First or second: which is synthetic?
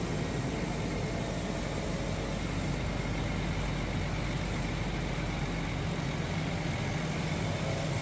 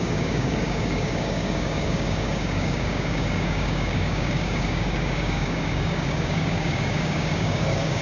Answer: second